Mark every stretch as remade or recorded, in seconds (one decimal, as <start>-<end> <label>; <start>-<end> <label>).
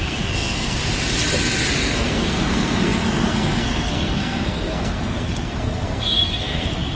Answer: 0.0-0.8 remade; 0.8-1.8 recorded; 1.8-7.0 remade